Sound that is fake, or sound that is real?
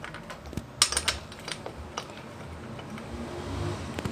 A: real